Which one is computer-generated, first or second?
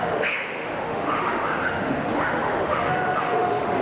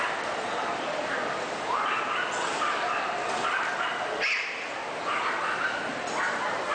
first